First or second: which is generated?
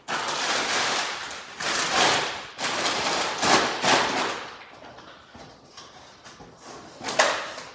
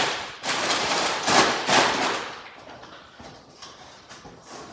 second